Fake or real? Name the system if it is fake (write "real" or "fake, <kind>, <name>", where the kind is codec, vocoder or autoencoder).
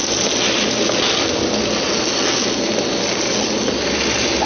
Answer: real